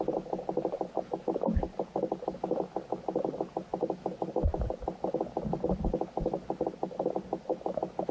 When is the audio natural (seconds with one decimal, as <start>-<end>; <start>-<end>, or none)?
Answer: 0.0-8.1